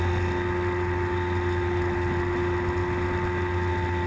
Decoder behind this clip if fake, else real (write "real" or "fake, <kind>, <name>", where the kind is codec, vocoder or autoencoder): real